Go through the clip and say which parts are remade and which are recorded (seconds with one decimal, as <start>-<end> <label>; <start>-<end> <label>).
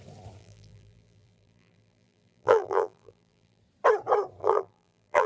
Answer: 0.0-0.4 recorded; 0.4-3.6 remade; 3.6-4.4 recorded; 4.4-5.3 remade